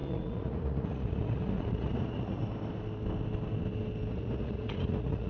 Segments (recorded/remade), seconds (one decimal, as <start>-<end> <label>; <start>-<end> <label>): 0.0-2.4 remade; 2.4-4.1 recorded; 4.1-5.3 remade